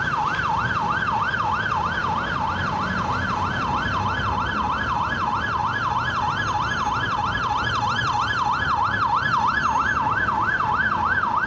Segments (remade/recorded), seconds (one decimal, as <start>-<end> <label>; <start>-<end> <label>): 0.0-11.5 recorded